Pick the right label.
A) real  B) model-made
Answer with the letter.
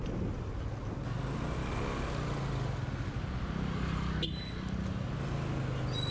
A